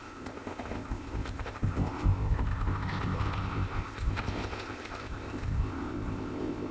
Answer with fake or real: fake